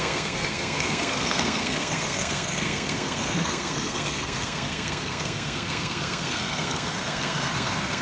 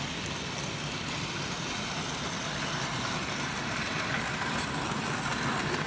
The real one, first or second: second